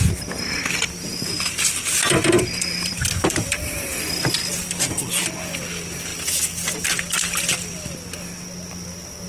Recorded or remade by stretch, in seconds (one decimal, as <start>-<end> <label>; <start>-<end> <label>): 0.0-1.1 recorded; 1.1-3.9 remade; 3.9-9.3 recorded